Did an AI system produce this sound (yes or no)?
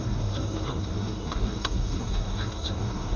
yes